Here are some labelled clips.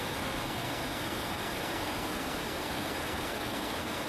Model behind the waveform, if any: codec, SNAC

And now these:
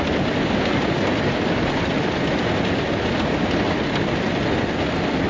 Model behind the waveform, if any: none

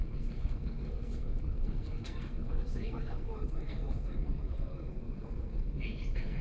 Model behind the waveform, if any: codec, SNAC